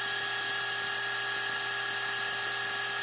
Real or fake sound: real